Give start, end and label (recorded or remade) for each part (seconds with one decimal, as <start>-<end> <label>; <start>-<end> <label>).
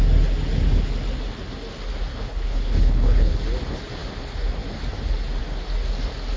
0.0-2.1 recorded; 2.1-3.4 remade; 3.4-6.4 recorded